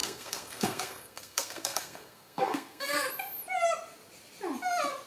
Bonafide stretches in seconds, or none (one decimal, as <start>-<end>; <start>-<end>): 3.1-5.1